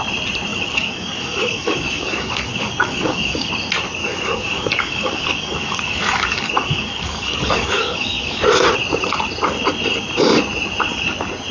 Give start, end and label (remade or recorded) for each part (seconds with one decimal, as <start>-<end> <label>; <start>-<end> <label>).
0.0-0.5 recorded; 0.5-3.5 remade; 3.5-4.0 recorded; 4.0-8.4 remade; 8.4-11.5 recorded